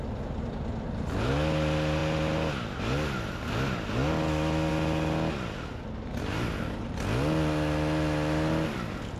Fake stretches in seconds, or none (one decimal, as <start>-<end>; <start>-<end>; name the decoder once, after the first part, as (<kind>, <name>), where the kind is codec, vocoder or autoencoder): none